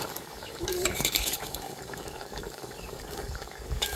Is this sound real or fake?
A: fake